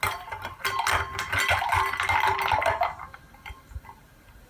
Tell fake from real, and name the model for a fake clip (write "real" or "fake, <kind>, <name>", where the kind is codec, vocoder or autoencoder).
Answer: real